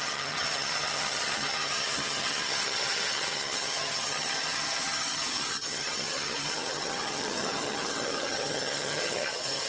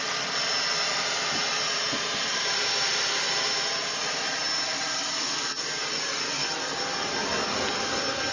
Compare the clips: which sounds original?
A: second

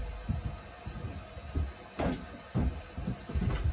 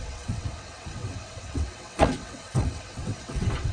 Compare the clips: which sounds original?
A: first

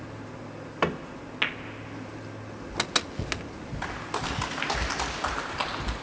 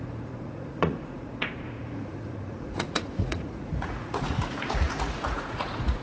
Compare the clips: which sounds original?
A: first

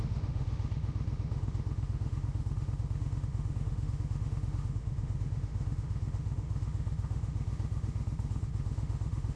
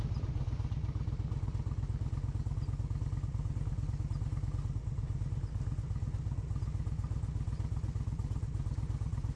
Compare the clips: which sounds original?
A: second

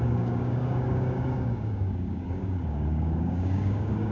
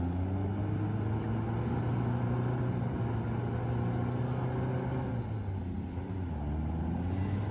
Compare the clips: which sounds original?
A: second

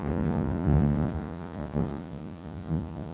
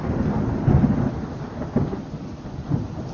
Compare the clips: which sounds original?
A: second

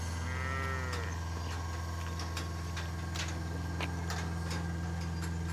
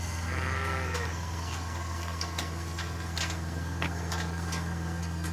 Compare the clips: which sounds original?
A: first